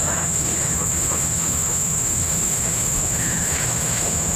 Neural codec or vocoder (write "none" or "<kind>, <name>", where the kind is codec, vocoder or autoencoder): autoencoder, DAC-VAE